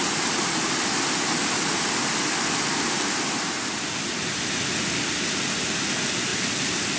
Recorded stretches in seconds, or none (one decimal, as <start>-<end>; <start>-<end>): 0.0-6.3